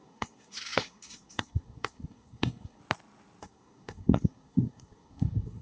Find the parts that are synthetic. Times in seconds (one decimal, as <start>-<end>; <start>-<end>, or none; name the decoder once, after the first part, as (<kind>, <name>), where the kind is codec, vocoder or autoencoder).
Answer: 0.0-2.8 (codec, SNAC); 3.4-5.6